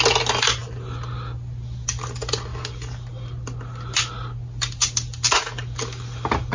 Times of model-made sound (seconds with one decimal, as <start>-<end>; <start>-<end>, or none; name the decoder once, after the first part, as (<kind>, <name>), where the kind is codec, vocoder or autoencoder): none